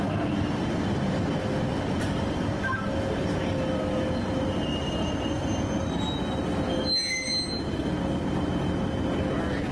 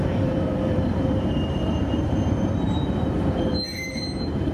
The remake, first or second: second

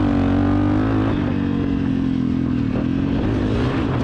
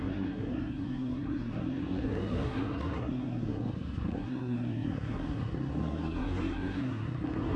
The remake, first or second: second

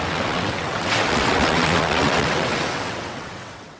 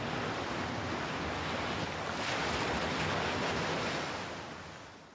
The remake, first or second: first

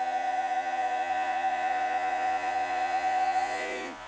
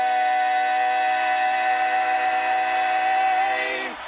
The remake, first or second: first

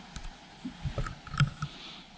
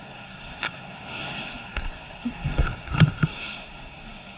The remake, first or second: second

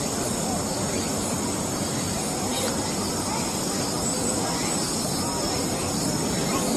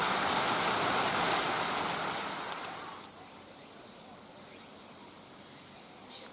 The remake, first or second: first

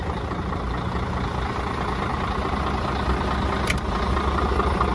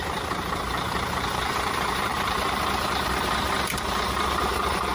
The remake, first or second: second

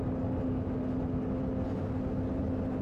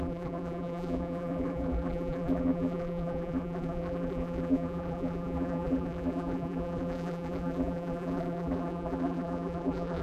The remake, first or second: second